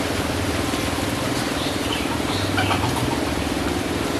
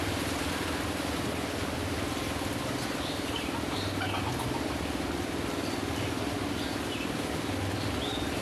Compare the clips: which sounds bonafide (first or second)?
second